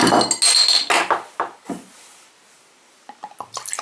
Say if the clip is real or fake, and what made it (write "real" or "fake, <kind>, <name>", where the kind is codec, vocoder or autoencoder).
real